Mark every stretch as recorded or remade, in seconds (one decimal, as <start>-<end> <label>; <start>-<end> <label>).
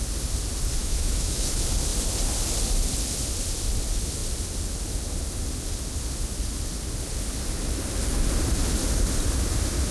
0.0-0.8 recorded; 0.8-1.5 remade; 1.5-9.9 recorded